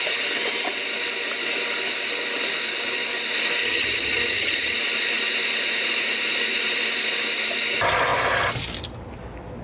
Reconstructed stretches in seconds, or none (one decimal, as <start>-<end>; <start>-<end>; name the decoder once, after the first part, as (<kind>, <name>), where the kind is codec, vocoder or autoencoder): 3.6-4.8 (vocoder, HiFi-GAN)